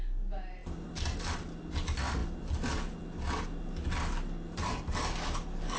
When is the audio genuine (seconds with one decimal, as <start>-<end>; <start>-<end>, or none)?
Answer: 0.0-5.8